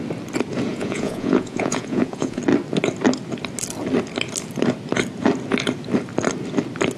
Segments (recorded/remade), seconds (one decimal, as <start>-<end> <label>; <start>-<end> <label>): 0.0-0.7 recorded; 0.7-2.4 remade; 2.4-7.0 recorded